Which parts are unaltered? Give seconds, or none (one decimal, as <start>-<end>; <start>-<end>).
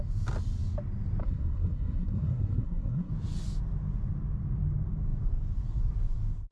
0.0-1.2; 3.1-6.5